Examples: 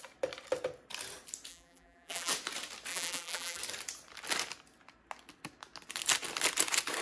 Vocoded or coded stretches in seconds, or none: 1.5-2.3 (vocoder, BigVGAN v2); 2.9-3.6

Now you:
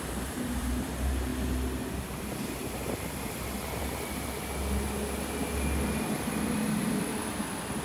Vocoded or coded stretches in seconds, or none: 0.0-1.3 (vocoder, BigVGAN v2); 1.9-2.6; 6.8-7.2

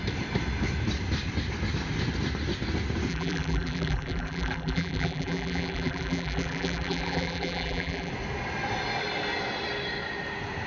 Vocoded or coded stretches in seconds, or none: 3.1-8.1 (vocoder, BigVGAN v2)

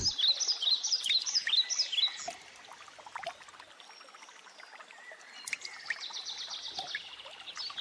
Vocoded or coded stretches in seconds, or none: 0.5-1.5 (vocoder, BigVGAN v2)